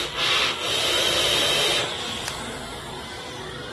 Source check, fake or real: fake